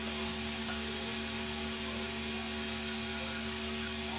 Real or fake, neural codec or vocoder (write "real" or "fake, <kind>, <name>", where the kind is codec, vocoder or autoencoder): real